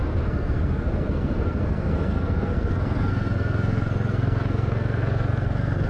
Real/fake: fake